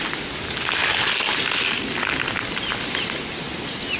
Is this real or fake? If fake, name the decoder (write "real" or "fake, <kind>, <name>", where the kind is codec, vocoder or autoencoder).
real